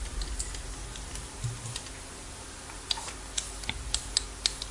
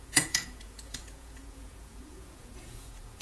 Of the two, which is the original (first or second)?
first